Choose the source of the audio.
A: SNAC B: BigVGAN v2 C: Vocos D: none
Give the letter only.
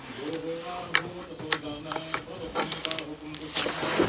D